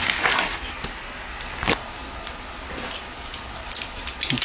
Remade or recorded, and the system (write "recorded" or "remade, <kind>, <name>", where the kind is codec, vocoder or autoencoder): recorded